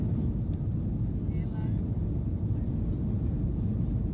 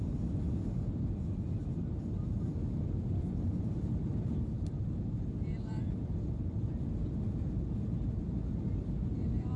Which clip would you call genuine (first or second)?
first